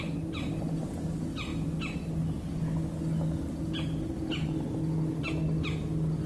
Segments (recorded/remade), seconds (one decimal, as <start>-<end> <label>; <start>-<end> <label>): 0.0-6.3 recorded